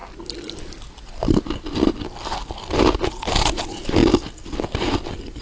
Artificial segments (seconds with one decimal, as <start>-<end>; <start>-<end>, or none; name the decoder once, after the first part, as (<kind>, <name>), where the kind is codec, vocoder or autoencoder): none